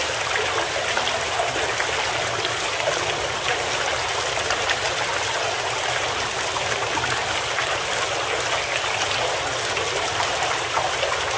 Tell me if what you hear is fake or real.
real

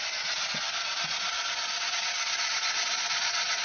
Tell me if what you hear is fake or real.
fake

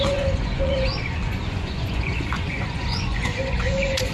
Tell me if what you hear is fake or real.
fake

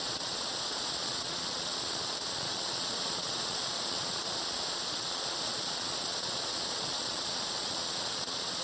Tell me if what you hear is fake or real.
fake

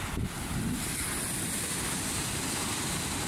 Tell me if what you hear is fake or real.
real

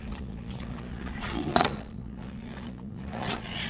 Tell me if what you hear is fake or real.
fake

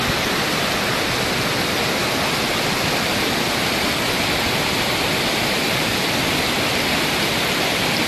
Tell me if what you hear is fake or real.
real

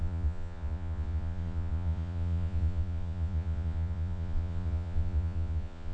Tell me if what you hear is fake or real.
fake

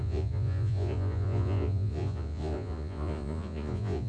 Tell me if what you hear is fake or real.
fake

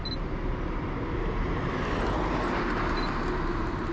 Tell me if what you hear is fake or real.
real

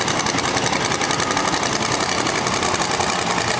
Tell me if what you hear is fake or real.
real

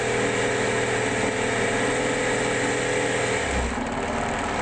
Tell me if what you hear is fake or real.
real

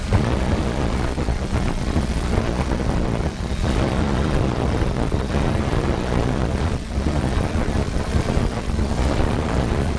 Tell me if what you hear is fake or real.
fake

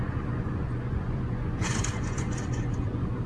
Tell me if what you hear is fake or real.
fake